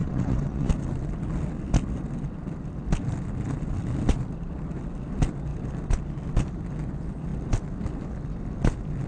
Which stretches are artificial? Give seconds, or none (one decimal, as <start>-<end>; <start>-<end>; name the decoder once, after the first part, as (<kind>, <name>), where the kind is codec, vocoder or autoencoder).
0.0-0.7 (vocoder, WaveNeXt)